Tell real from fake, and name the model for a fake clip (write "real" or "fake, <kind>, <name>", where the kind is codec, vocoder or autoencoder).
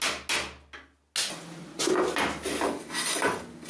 real